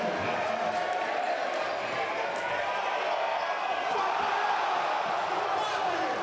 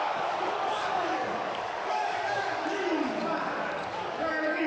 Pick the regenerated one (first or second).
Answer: second